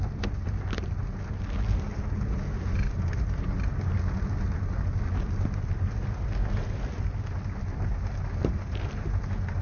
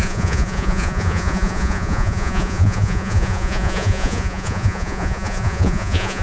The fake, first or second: second